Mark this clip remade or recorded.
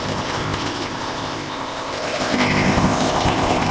remade